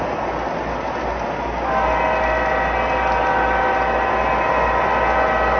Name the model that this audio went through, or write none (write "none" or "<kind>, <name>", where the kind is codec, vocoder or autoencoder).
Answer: none